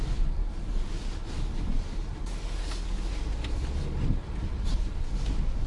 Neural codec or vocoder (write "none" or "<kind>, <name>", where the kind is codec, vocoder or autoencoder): none